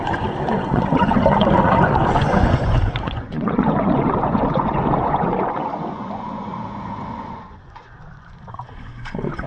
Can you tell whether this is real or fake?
fake